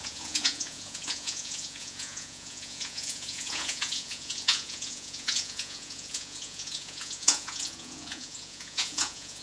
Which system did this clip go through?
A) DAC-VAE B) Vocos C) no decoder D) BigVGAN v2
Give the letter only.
B